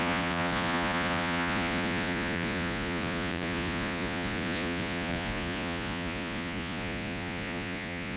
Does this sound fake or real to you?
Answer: fake